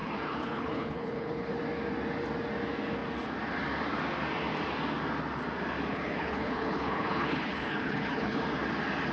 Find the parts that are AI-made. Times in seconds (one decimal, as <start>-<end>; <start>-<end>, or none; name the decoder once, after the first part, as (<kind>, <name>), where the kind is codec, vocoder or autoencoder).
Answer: 0.0-1.5 (codec, HILCodec); 5.9-8.4